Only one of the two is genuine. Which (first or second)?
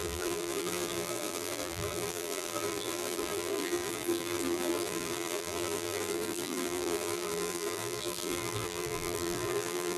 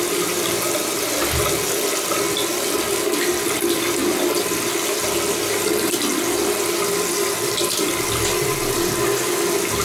second